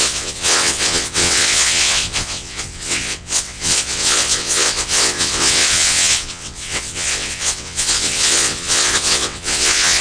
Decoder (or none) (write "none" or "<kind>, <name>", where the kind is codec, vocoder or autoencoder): vocoder, WaveNeXt